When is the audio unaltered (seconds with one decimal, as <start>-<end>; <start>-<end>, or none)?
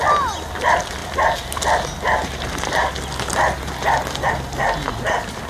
0.0-5.5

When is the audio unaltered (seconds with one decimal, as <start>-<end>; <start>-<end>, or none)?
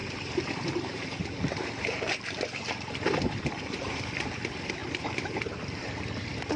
4.0-4.8; 5.8-6.6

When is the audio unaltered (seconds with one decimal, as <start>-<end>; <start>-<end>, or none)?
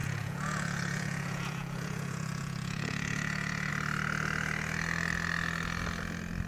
3.7-6.5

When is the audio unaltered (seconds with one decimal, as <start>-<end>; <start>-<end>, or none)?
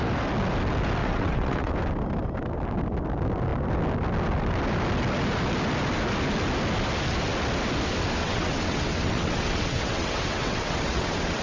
0.0-1.0; 1.7-8.2